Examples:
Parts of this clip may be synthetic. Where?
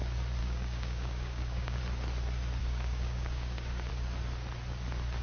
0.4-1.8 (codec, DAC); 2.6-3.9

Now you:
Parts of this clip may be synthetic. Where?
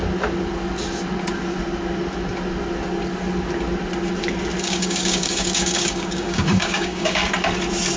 4.6-7.2 (codec, DAC)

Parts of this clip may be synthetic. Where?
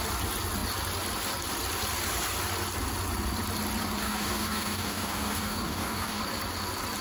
4.0-6.2 (codec, DAC)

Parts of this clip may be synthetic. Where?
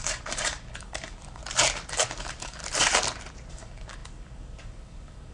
0.0-1.4 (codec, DAC); 1.9-2.6; 3.5-5.3